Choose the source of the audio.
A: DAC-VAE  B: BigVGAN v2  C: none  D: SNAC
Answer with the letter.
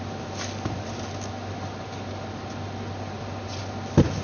C